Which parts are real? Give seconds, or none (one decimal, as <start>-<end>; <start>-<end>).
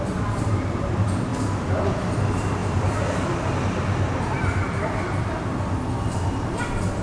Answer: 0.0-7.0